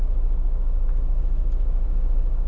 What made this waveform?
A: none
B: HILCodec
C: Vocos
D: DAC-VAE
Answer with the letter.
A